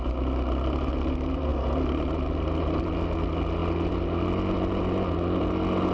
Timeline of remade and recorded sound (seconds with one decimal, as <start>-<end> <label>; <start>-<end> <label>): 0.0-5.9 recorded